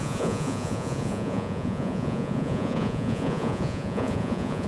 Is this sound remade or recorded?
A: remade